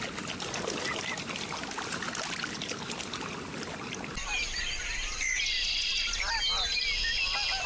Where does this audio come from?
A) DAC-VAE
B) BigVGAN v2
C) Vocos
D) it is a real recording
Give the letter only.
D